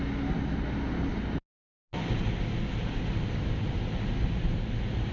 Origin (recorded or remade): recorded